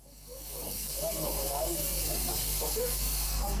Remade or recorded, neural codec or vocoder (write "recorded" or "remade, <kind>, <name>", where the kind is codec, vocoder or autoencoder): remade, codec, SNAC